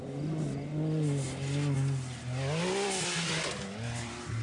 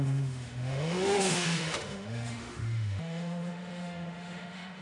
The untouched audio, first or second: first